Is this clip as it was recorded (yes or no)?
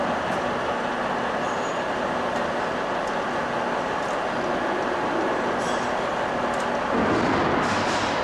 yes